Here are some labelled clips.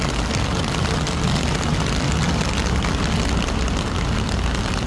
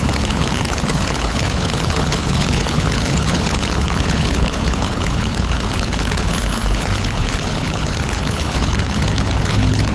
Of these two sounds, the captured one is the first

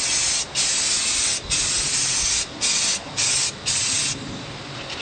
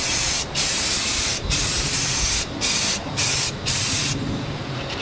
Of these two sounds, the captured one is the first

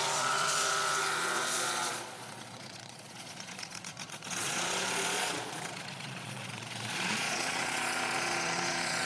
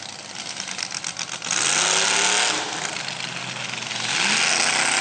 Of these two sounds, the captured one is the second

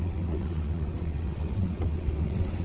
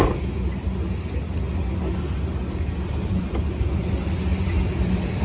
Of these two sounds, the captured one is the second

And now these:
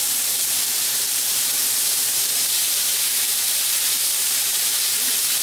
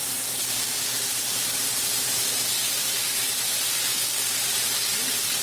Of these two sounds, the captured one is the second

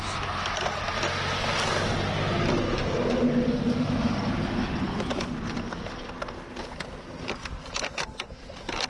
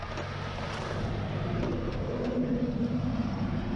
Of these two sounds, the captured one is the first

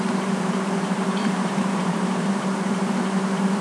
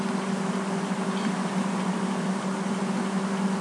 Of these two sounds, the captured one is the second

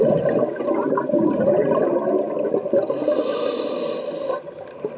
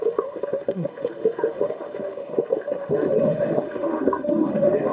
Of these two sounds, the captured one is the first